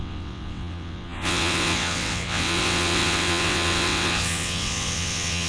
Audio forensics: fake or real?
fake